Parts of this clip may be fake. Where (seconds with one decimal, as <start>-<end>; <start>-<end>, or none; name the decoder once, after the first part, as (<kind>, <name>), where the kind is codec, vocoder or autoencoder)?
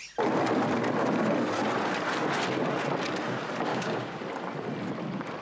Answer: 3.7-4.2 (codec, DAC)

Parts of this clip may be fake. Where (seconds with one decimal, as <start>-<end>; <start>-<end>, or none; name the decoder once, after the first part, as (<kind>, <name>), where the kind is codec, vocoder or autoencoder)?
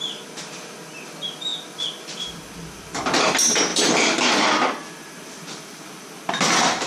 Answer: 1.5-3.0 (vocoder, BigVGAN v2); 3.7-6.3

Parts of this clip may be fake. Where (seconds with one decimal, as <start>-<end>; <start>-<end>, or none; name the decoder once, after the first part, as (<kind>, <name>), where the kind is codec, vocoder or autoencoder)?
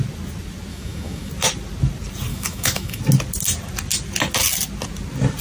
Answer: 0.7-1.3 (autoencoder, DAC-VAE); 2.3-3.0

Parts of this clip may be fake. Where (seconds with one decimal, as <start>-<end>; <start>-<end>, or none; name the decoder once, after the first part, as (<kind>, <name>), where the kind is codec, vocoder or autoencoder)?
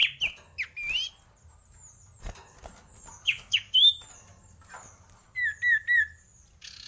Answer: 3.1-3.9 (codec, DAC)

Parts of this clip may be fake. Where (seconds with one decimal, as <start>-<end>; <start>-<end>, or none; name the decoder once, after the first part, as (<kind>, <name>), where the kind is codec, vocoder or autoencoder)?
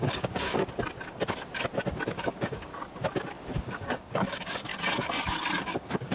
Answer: 0.0-0.6 (codec, DAC); 2.1-2.7; 3.6-4.7; 5.6-6.1